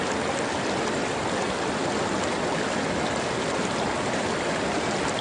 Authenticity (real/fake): real